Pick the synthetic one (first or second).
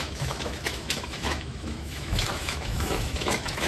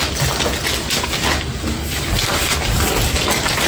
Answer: first